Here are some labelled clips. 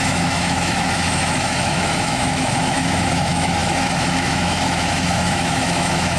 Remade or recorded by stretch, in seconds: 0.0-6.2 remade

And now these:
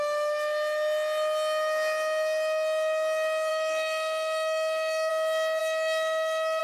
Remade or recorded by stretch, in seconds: 0.0-3.5 recorded; 3.5-5.1 remade; 5.1-5.6 recorded; 5.6-6.6 remade